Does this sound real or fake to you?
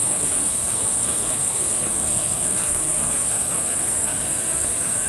fake